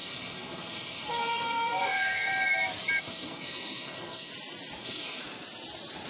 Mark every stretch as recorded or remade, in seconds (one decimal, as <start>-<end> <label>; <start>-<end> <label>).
0.0-2.3 remade; 2.3-3.0 recorded; 3.0-4.3 remade; 4.3-4.8 recorded; 4.8-5.2 remade; 5.2-6.1 recorded